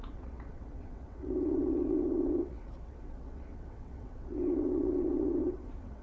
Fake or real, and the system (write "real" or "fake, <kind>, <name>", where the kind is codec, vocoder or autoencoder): fake, vocoder, WaveNeXt